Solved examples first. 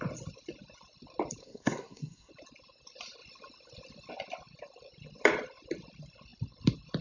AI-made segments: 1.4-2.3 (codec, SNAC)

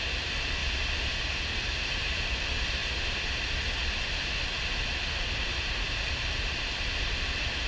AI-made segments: 0.0-0.6 (vocoder, BigVGAN v2); 1.2-2.8; 5.0-7.7

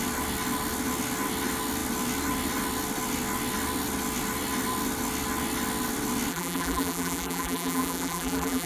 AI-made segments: 6.3-8.7 (vocoder, BigVGAN v2)